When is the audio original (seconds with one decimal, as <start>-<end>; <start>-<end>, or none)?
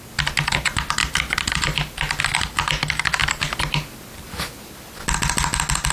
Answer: 0.0-5.9